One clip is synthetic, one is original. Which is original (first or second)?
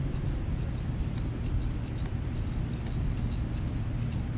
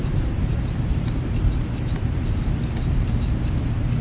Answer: first